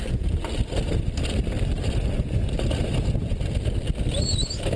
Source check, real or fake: real